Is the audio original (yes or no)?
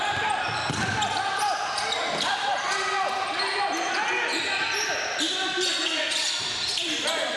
yes